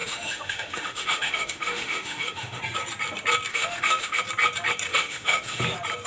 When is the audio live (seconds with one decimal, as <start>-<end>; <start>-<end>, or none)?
2.6-3.5; 4.2-4.9; 5.6-6.1